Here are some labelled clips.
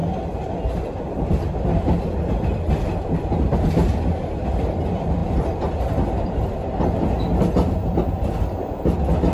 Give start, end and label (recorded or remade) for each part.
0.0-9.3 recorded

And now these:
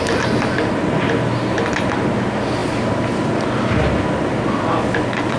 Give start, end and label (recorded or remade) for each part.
0.0-5.4 recorded

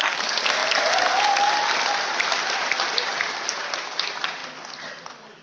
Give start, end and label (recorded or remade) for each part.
0.0-5.4 recorded

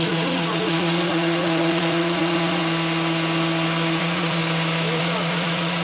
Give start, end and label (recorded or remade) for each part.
0.0-2.6 remade; 2.6-4.0 recorded; 4.0-4.4 remade; 4.4-5.0 recorded; 5.0-5.8 remade